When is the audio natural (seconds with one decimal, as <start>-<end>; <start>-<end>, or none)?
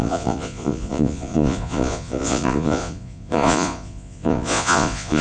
none